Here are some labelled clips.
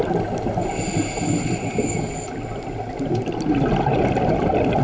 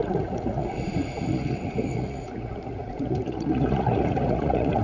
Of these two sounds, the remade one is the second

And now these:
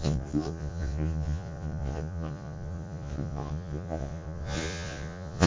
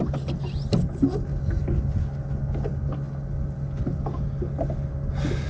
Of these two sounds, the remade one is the first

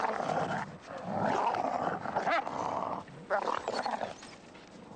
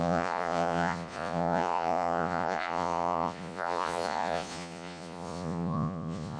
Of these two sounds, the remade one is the second